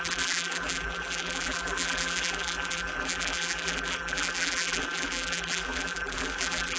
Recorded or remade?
remade